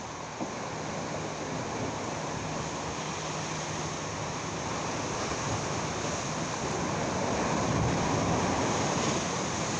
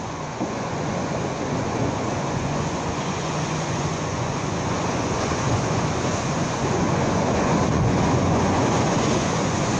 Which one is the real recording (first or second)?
first